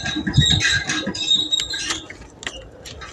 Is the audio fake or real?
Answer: real